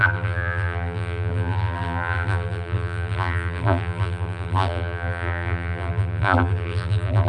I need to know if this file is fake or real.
fake